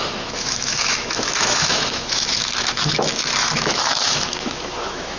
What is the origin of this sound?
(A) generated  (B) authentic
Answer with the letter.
A